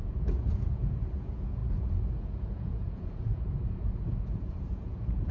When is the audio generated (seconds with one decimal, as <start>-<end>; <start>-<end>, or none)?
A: 0.0-5.3